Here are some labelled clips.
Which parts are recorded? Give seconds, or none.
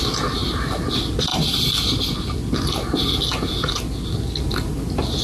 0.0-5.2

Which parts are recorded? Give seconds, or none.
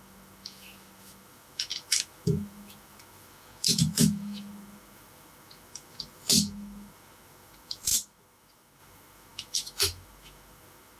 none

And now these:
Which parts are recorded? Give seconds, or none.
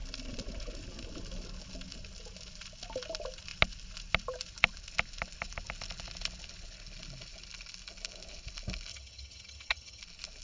0.0-8.9; 10.0-10.4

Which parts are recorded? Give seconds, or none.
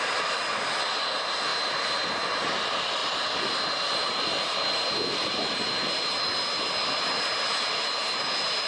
0.0-8.7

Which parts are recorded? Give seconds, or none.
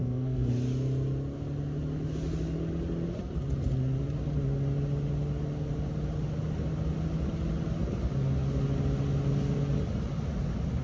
0.5-10.8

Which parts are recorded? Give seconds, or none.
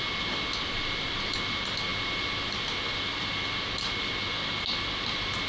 0.0-5.5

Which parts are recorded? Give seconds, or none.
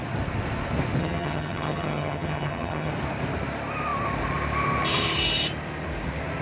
0.0-1.0; 2.9-6.4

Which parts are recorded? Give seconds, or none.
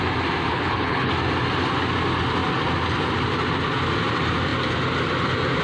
0.0-0.5; 1.1-5.6